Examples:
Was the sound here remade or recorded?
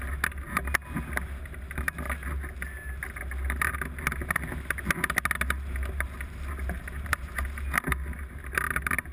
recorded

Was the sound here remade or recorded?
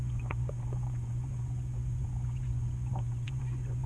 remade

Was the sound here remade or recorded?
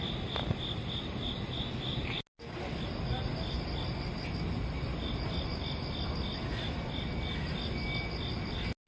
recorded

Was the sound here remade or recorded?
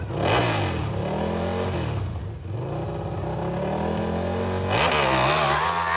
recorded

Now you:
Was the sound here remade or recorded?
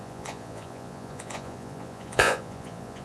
remade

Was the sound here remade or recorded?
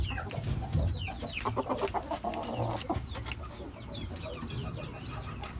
recorded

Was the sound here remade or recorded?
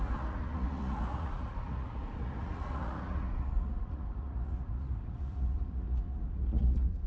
remade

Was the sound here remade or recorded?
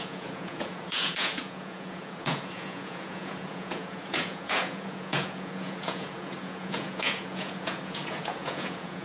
remade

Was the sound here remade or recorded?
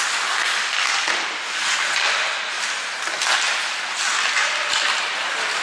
recorded